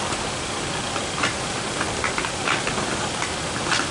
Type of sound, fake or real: real